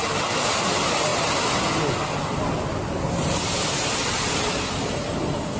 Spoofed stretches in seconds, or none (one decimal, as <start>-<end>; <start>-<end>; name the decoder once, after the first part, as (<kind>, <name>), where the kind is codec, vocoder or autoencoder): none